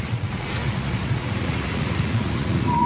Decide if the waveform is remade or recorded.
remade